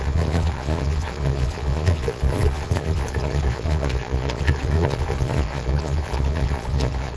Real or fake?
fake